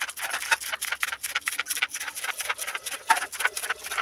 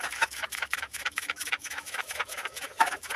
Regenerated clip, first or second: second